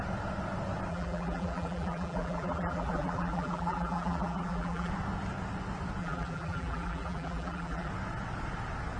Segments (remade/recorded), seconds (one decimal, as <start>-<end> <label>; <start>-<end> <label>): 0.0-0.9 recorded; 0.9-4.9 remade; 4.9-6.0 recorded; 6.0-7.9 remade; 7.9-9.0 recorded